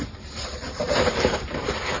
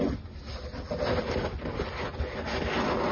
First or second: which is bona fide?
second